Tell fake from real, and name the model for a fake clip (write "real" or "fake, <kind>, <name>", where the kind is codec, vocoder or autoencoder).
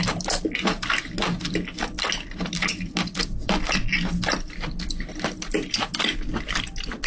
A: real